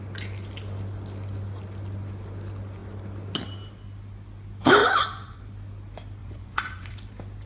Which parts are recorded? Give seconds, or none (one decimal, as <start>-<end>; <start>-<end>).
0.0-4.8; 5.4-6.2; 6.9-7.5